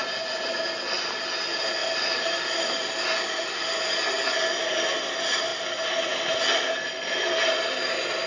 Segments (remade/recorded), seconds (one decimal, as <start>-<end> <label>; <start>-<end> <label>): 0.0-1.8 recorded; 1.8-3.1 remade; 3.1-5.5 recorded; 5.5-6.2 remade; 6.2-8.3 recorded